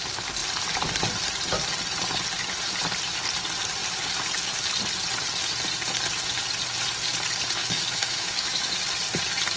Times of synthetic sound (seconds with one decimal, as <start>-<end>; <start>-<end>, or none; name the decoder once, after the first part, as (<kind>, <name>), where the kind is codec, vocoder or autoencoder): 7.6-8.8 (autoencoder, DAC-VAE)